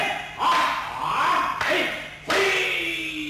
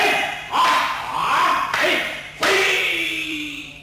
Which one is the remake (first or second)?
second